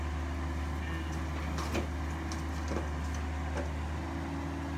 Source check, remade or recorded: recorded